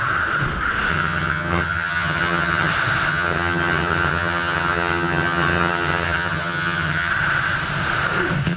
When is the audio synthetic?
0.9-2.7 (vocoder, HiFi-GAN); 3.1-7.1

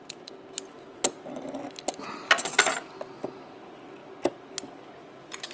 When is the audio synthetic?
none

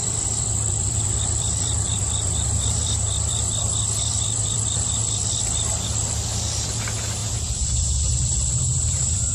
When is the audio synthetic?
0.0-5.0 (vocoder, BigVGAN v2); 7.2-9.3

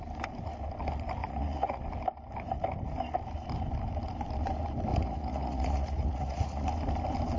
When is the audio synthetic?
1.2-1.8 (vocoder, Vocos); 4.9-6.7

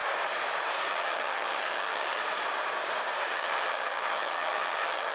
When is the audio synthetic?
0.9-2.2 (vocoder, HiFi-GAN); 3.3-5.1

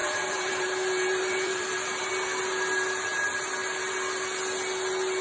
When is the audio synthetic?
0.0-2.1 (vocoder, BigVGAN v2)

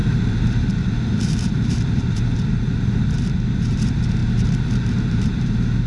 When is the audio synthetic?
0.0-5.9 (vocoder, BigVGAN v2)